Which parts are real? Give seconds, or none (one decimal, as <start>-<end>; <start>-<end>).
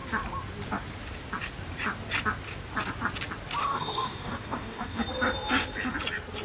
0.0-3.6; 5.0-6.4